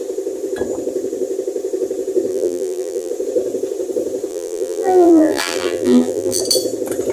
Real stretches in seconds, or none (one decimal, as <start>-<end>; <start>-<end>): 0.0-2.3; 3.1-4.3; 6.4-7.1